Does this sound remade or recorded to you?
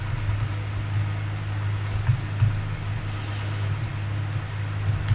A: recorded